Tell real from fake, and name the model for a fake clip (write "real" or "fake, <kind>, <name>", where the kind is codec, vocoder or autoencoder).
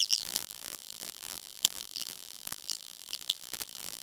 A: fake, vocoder, BigVGAN v2